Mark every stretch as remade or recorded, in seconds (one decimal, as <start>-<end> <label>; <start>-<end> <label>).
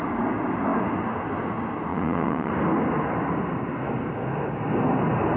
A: 0.0-1.9 recorded; 1.9-2.5 remade; 2.5-5.4 recorded